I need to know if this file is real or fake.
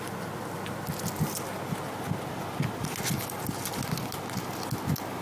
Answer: real